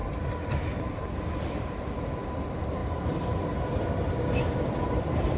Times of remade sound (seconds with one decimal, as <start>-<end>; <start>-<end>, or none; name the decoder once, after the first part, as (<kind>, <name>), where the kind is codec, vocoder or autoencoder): 2.8-5.4 (vocoder, BigVGAN v2)